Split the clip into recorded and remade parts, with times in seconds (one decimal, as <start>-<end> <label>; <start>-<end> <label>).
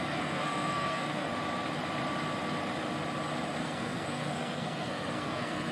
0.0-1.3 remade; 1.3-3.6 recorded; 3.6-5.7 remade